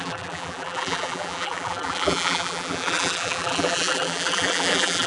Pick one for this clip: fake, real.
fake